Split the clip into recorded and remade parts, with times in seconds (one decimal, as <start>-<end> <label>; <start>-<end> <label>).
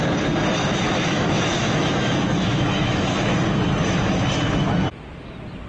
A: 0.0-0.6 recorded; 0.6-3.3 remade; 3.3-3.8 recorded; 3.8-4.3 remade; 4.3-5.7 recorded